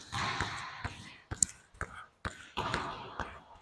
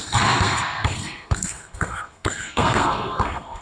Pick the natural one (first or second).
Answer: first